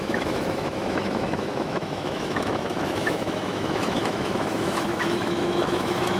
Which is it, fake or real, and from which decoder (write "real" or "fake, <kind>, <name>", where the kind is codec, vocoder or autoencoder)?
fake, autoencoder, DAC-VAE